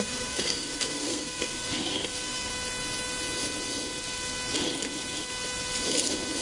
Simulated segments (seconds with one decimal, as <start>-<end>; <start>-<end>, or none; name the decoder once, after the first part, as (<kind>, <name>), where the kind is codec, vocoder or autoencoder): 0.0-2.5 (codec, SNAC)